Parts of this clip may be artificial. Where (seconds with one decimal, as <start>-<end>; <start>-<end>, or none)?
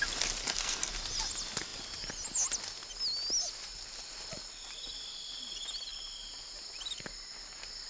0.4-0.9